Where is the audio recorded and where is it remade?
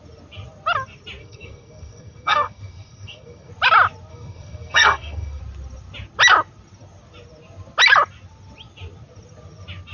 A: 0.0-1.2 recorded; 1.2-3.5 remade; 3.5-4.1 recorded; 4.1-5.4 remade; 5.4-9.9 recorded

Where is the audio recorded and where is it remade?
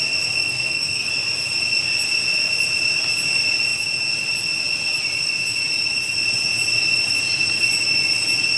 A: 0.0-0.4 recorded; 0.4-1.1 remade; 1.1-8.6 recorded